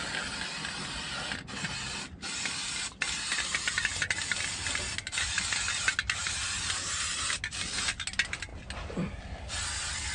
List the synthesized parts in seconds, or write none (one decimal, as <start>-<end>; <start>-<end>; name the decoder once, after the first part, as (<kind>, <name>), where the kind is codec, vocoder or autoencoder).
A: none